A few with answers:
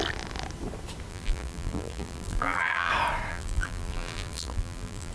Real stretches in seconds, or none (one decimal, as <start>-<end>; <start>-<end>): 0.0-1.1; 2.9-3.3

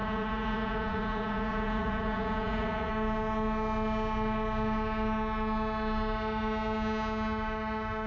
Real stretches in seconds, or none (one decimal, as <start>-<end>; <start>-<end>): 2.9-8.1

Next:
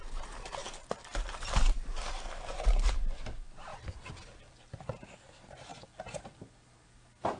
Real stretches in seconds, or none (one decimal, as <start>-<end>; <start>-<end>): 3.7-4.9; 5.7-6.4